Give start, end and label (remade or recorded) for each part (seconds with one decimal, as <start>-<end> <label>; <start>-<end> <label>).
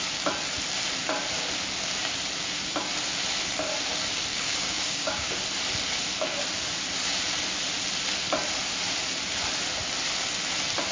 0.0-4.3 recorded; 4.3-5.3 remade; 5.3-10.9 recorded